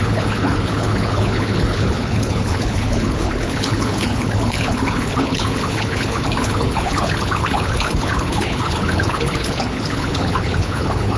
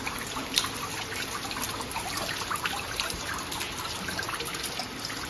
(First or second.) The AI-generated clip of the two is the first